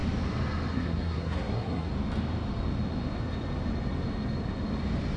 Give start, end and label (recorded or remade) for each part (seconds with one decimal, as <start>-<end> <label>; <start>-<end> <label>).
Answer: 0.0-0.7 recorded; 0.7-1.9 remade; 1.9-5.2 recorded